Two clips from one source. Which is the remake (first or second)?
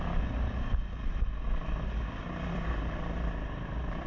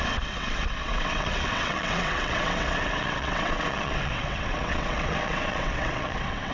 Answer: second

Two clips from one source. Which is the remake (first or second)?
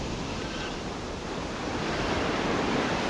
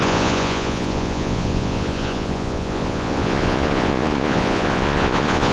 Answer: second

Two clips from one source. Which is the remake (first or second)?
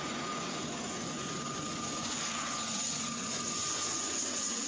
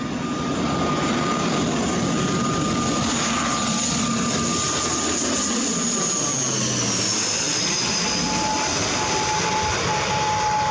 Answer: first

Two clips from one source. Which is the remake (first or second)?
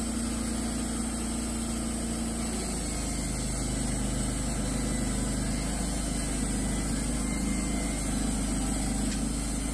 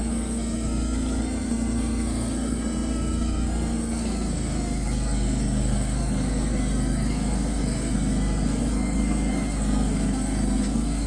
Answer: second